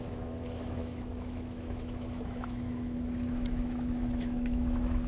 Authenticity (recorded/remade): remade